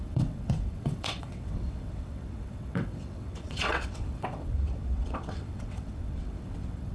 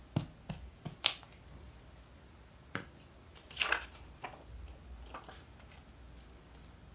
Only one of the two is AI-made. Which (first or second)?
first